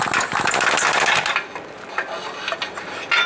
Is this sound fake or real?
real